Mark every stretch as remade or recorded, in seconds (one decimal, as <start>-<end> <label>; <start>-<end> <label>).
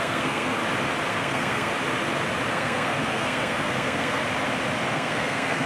0.0-0.6 remade; 0.6-1.1 recorded; 1.1-1.7 remade; 1.7-2.5 recorded; 2.5-4.2 remade; 4.2-4.9 recorded; 4.9-5.7 remade